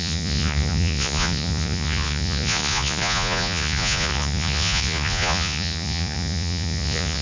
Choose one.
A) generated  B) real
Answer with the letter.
A